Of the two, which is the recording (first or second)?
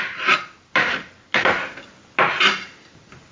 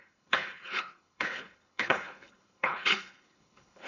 first